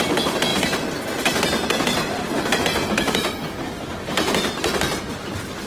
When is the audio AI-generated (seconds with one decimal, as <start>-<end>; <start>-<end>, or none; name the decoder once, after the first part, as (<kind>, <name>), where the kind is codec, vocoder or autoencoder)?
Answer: none